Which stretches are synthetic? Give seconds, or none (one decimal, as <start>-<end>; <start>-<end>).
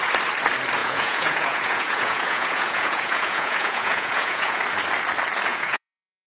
0.8-4.6; 5.5-6.3